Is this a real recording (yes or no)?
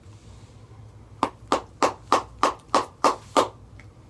yes